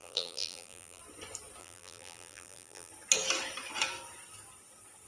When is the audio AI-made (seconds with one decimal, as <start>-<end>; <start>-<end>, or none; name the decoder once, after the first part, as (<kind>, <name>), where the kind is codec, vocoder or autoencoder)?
0.0-1.0 (vocoder, BigVGAN v2); 1.6-2.9